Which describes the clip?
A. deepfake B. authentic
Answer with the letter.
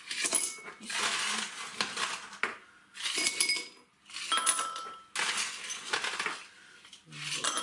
B